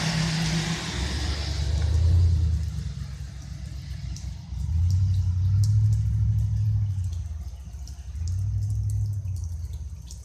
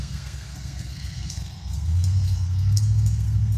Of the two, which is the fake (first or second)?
second